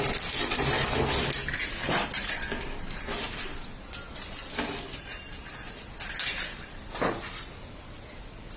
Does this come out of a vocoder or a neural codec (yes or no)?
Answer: no